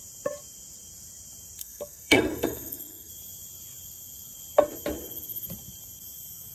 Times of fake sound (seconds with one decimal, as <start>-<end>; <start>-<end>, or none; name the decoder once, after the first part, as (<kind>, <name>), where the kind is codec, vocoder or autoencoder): 1.6-3.1 (codec, SNAC)

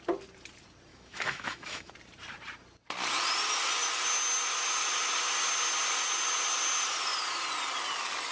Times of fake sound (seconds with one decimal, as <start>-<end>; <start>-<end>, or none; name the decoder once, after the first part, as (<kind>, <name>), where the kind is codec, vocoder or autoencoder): 0.9-1.9 (autoencoder, DAC-VAE)

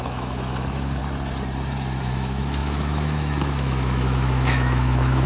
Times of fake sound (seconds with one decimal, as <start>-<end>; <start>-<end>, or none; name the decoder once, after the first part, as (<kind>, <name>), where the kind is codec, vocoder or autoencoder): 0.0-1.0 (autoencoder, DAC-VAE); 2.0-5.3

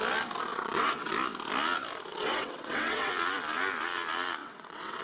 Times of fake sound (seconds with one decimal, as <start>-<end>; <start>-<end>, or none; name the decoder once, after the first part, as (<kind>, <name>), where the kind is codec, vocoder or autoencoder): 0.5-1.1 (vocoder, WaveNeXt); 2.1-3.1; 4.4-5.0

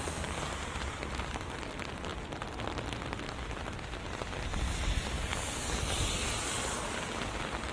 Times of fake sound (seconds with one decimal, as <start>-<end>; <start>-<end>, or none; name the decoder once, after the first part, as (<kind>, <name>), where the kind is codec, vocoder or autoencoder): none